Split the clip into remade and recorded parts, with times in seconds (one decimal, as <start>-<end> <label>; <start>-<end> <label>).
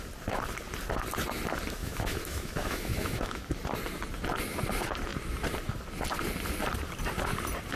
0.0-1.8 recorded; 1.8-3.5 remade; 3.5-7.8 recorded